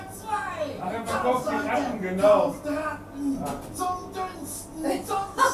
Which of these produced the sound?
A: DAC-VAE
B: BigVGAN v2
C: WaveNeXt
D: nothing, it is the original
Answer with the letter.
D